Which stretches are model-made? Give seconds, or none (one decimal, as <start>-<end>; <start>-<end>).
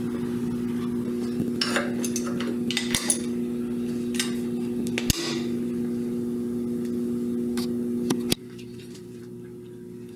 8.4-9.2